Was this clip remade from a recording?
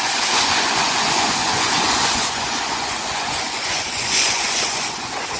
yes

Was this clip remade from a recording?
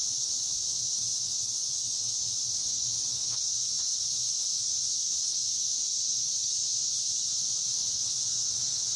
yes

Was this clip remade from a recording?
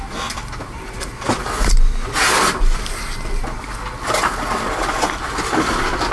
no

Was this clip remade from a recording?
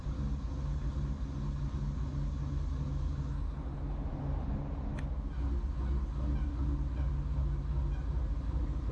no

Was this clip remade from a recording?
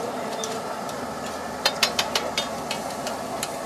yes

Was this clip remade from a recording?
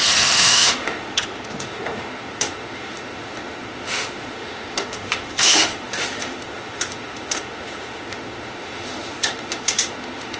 yes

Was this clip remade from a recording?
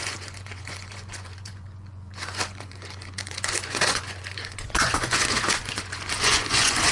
yes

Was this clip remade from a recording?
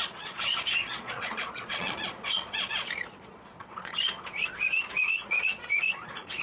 yes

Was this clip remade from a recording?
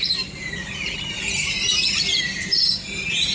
yes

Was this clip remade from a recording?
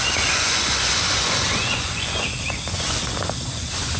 yes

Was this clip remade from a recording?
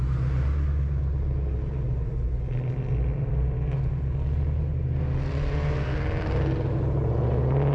no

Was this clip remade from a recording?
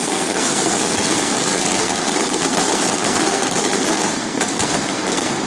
yes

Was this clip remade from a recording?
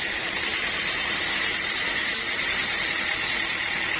yes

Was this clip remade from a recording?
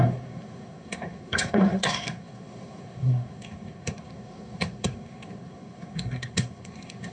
yes